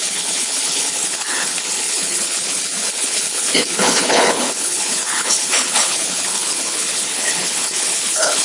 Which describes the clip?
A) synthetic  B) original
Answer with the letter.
A